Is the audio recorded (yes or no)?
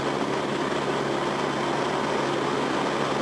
yes